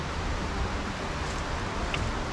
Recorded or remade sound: recorded